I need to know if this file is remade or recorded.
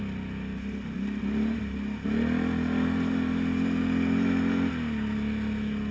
recorded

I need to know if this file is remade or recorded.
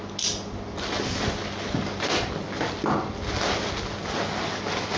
recorded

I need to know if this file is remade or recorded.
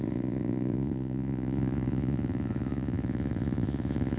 remade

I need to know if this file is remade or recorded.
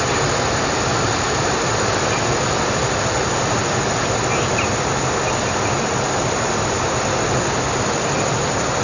recorded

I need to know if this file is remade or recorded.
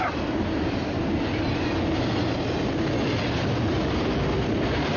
recorded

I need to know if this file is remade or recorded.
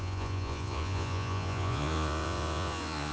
remade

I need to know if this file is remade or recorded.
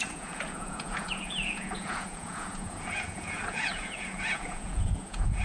remade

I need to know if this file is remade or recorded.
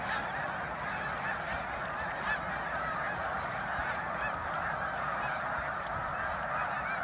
recorded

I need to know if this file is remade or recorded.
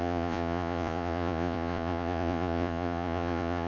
remade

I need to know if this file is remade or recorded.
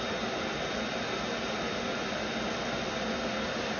recorded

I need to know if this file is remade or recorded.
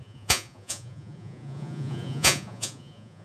remade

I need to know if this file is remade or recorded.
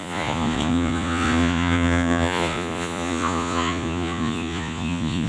remade